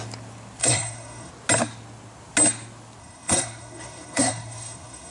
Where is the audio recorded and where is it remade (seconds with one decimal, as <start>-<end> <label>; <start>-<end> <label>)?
0.0-0.6 recorded; 0.6-1.3 remade; 1.3-3.0 recorded; 3.0-5.1 remade